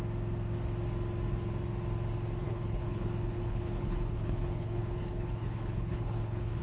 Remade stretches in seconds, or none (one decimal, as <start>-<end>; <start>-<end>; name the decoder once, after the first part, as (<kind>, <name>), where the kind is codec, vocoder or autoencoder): 2.4-6.6 (codec, HILCodec)